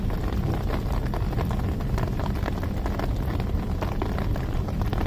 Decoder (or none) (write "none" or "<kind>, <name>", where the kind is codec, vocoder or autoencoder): none